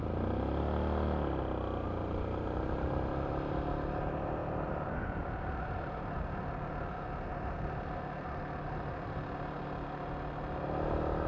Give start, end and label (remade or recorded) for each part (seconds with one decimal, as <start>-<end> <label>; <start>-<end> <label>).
0.0-11.3 recorded